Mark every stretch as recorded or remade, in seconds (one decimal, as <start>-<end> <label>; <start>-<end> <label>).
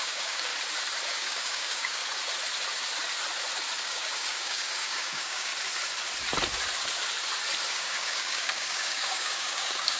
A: 0.0-0.5 remade; 0.5-1.1 recorded; 1.1-2.0 remade; 2.0-3.8 recorded; 3.8-5.5 remade; 5.5-7.7 recorded; 7.7-10.0 remade